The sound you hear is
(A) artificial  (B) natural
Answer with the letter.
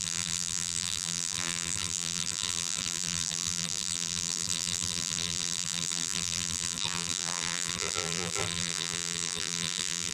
A